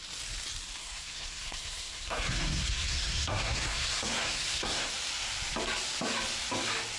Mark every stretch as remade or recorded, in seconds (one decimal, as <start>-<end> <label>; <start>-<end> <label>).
0.0-0.8 recorded; 0.8-4.9 remade; 4.9-7.0 recorded